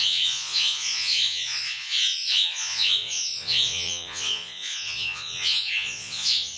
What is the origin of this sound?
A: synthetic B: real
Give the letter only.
A